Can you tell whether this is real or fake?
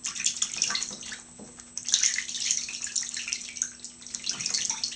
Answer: real